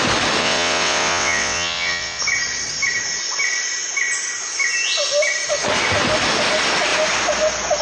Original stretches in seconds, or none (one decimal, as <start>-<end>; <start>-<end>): 0.0-0.4; 2.2-7.8